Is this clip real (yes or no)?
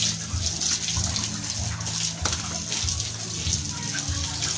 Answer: yes